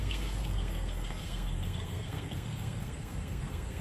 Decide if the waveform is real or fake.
fake